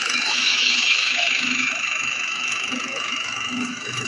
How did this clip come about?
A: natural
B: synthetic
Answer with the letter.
B